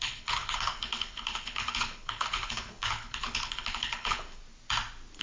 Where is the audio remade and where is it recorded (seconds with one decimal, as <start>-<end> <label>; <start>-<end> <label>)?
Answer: 0.0-4.4 remade; 4.4-5.2 recorded